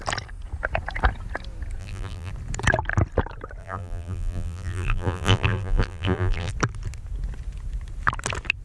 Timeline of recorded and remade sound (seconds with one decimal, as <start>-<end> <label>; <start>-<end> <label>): 0.0-1.8 recorded; 1.8-2.3 remade; 2.3-3.6 recorded; 3.6-6.5 remade; 6.5-8.6 recorded